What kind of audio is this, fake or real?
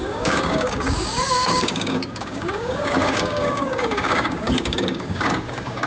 fake